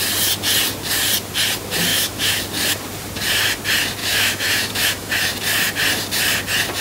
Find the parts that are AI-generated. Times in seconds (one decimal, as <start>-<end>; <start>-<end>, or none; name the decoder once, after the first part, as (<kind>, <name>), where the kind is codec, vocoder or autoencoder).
1.9-2.4 (autoencoder, DAC-VAE); 4.0-5.1